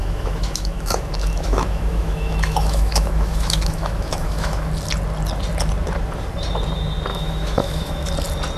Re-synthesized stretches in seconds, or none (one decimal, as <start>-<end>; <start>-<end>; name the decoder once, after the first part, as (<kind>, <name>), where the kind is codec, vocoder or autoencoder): 0.0-4.7 (autoencoder, DAC-VAE); 7.1-8.1